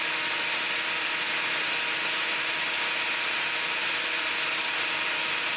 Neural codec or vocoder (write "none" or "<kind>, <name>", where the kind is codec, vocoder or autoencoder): none